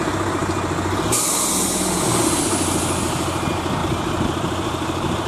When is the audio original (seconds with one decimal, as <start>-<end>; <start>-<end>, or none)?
0.0-3.8

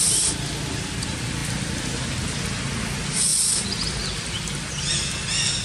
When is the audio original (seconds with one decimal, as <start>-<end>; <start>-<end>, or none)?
0.0-5.6

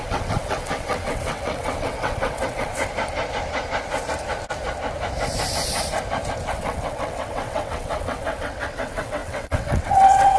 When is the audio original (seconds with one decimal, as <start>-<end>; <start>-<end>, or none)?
2.8-6.5

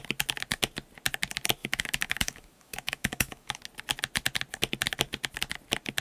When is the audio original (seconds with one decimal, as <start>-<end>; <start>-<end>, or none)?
0.0-1.6; 3.6-6.0

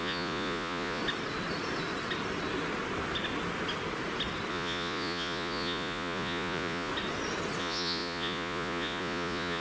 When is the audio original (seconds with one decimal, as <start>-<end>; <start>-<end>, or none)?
1.0-4.5; 6.9-7.6